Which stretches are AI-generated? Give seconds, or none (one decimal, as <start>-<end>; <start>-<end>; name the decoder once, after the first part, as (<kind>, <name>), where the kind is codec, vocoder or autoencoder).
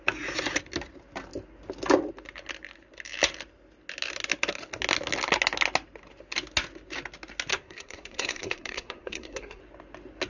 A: 7.5-9.6 (codec, SNAC)